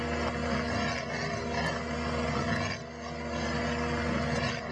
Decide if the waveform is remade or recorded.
recorded